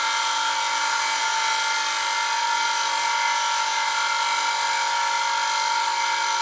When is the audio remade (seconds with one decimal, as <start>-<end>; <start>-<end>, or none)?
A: none